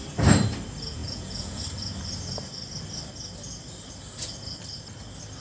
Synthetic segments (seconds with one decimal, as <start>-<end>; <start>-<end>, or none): 1.0-1.6